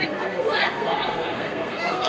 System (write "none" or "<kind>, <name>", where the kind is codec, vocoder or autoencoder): codec, SNAC